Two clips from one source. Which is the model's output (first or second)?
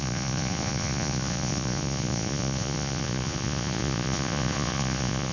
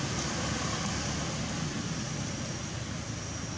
first